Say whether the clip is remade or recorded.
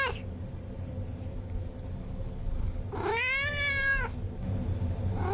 recorded